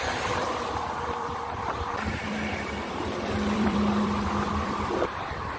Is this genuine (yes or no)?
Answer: no